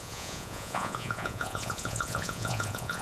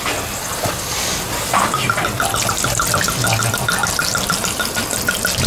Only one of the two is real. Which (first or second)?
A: second